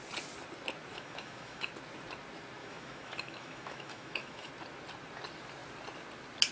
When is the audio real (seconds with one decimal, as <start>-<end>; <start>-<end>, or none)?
0.0-0.9; 1.7-2.6; 4.5-6.5